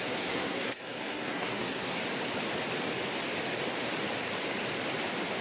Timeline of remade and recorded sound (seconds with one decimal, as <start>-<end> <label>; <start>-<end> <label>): 0.0-2.0 remade; 2.0-5.4 recorded